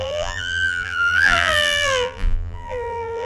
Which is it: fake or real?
fake